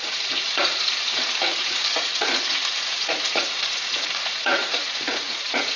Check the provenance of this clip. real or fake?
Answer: fake